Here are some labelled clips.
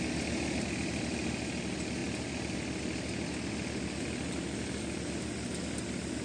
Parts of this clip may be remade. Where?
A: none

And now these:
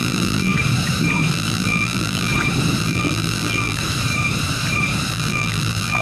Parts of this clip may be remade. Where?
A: 0.0-0.5 (vocoder, BigVGAN v2); 1.3-2.3; 2.8-3.8; 5.1-6.0

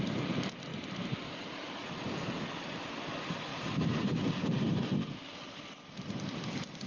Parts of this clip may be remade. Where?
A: 0.7-2.3 (vocoder, BigVGAN v2); 3.5-4.0

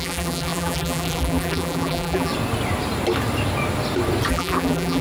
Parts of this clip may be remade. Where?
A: 0.0-2.3 (vocoder, BigVGAN v2); 4.3-5.0

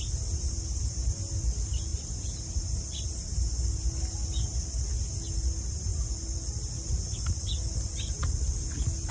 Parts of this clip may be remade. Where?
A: none

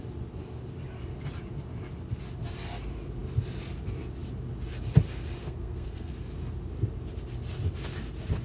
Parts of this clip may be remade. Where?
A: 5.4-6.1 (codec, SNAC)